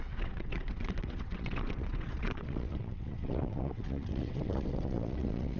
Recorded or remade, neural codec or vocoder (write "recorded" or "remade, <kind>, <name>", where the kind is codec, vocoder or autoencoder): remade, vocoder, WaveNeXt